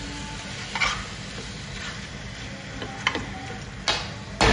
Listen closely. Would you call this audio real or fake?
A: real